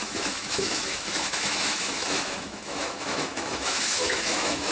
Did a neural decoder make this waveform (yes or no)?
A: yes